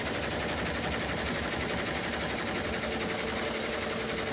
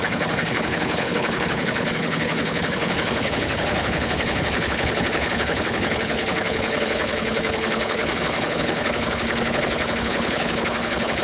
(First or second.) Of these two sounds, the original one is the first